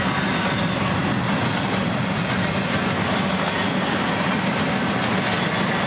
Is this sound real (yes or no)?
yes